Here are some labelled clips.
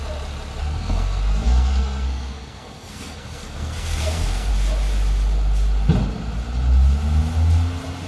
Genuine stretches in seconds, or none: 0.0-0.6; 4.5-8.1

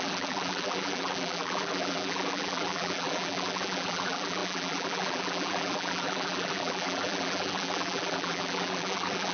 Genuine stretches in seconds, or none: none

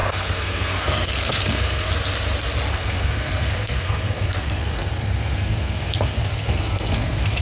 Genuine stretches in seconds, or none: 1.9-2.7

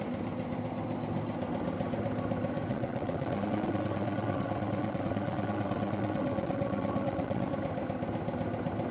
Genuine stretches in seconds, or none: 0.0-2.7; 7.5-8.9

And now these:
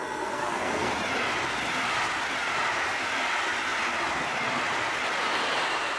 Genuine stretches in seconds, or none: 0.9-6.0

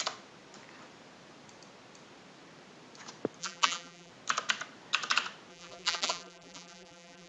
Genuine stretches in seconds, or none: 0.0-3.4; 4.1-5.5